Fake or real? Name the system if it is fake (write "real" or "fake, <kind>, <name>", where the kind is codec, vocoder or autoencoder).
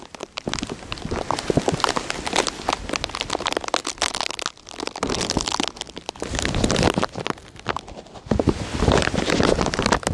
real